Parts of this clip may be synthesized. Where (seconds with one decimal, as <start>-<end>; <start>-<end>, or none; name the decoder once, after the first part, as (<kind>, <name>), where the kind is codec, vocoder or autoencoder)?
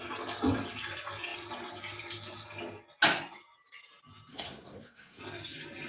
4.3-5.2 (codec, SNAC)